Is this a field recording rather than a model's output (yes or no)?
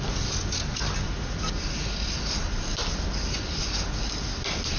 yes